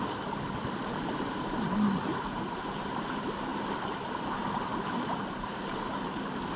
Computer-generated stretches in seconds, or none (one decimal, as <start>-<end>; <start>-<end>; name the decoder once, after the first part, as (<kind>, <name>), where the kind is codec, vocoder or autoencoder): 0.0-6.6 (vocoder, BigVGAN v2)